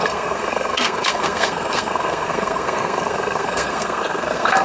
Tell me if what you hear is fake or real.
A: fake